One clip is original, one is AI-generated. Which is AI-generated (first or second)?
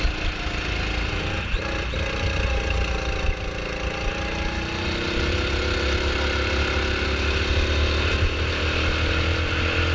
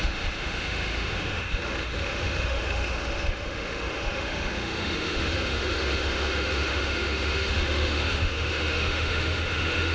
second